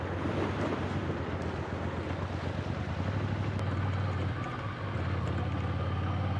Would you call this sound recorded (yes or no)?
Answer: yes